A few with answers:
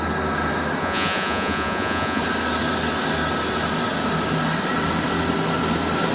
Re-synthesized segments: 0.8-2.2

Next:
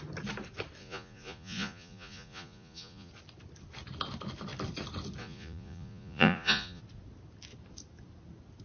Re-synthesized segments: 0.8-3.1; 5.2-6.8

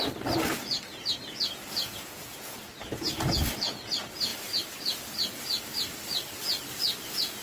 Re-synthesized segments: 1.9-2.7

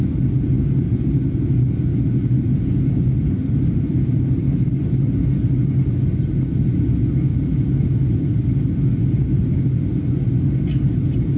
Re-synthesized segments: none